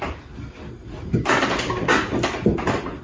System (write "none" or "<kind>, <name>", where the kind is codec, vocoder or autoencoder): none